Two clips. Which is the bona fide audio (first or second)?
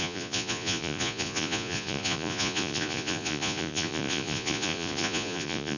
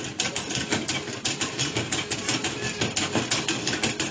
second